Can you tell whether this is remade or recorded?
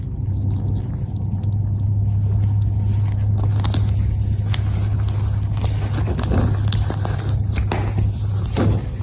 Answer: recorded